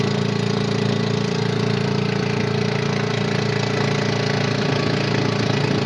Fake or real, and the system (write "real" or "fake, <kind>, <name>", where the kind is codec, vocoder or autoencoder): real